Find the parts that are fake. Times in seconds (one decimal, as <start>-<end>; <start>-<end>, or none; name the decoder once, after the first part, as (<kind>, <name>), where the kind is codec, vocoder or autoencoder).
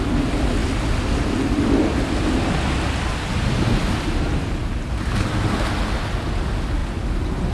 none